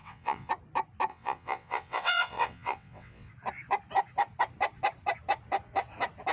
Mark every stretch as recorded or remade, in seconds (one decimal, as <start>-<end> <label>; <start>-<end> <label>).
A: 0.0-0.5 remade; 0.5-1.1 recorded; 1.1-3.3 remade; 3.3-6.3 recorded